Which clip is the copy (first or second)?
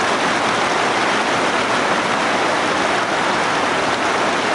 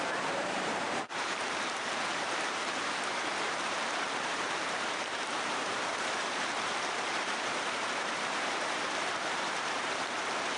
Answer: second